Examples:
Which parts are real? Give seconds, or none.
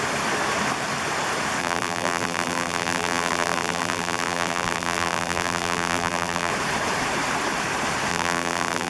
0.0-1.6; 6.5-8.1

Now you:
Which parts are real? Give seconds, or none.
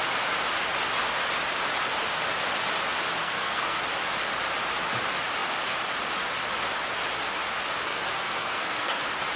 0.0-3.2; 3.8-7.9; 9.0-9.4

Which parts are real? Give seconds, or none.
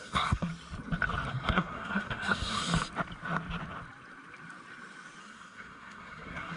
0.5-1.3; 2.6-5.2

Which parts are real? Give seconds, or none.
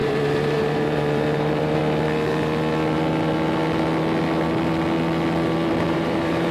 1.8-5.7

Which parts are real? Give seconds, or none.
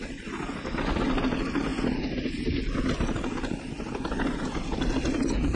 0.0-5.6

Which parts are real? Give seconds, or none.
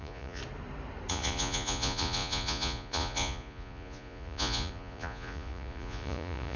0.4-1.1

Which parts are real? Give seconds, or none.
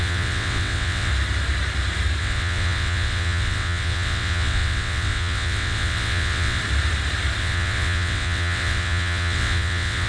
1.1-2.2; 6.6-7.4